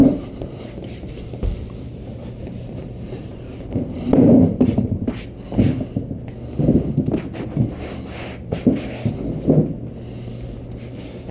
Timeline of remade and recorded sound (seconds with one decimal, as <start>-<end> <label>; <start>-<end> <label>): 0.0-5.0 remade; 5.0-11.3 recorded